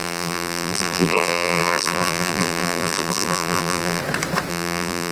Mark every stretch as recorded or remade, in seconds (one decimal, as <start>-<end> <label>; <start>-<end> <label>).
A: 0.0-4.0 remade; 4.0-4.5 recorded; 4.5-5.1 remade